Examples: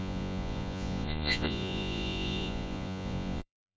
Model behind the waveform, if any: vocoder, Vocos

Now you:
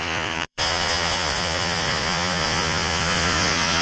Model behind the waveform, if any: vocoder, Vocos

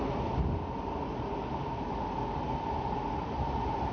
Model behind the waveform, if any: none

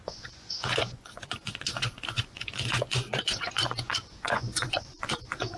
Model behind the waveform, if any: vocoder, Vocos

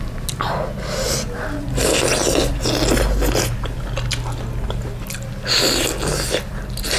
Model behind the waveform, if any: none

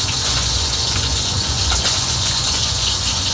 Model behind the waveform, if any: vocoder, Vocos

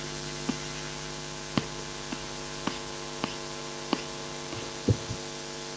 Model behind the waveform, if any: none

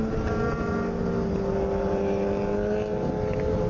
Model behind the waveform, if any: none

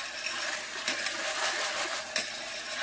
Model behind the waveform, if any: none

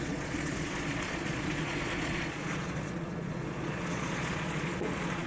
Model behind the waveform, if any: vocoder, Vocos